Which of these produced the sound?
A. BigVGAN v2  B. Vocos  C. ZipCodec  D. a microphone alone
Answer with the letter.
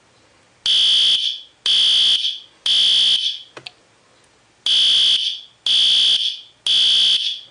D